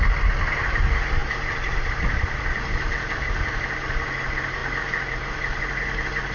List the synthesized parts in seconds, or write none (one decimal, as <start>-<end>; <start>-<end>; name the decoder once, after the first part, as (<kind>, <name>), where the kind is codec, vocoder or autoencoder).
none